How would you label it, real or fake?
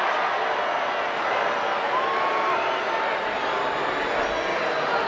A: real